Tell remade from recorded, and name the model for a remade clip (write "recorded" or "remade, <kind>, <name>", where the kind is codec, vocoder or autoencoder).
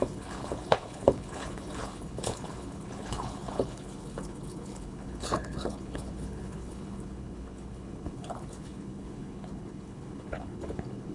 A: remade, codec, HILCodec